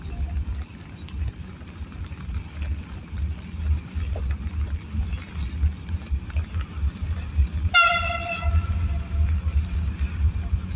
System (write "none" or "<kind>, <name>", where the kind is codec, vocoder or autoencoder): none